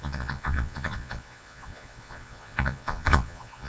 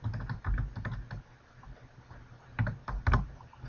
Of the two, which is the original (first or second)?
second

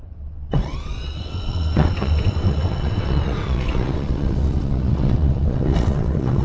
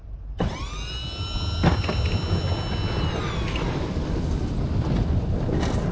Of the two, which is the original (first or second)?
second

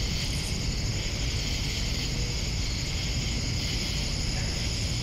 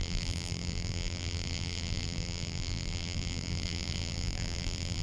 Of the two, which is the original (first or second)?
first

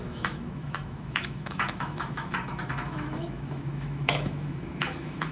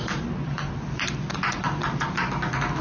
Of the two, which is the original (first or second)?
second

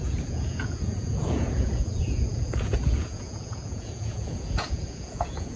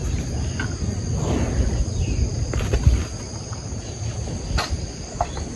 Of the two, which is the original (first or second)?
second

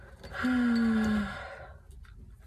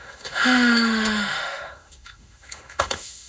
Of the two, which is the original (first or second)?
first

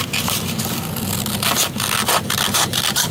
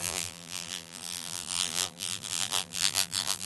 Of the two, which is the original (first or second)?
first